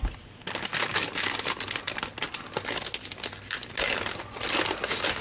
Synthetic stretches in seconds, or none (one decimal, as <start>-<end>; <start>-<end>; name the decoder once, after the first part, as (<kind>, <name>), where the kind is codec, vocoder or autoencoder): none